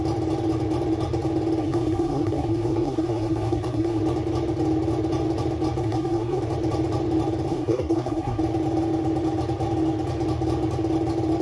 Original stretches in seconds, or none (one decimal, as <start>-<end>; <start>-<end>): 0.0-1.6; 4.0-5.8; 6.4-7.5; 8.4-11.4